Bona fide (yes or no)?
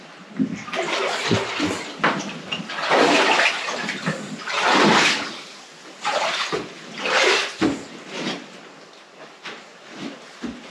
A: yes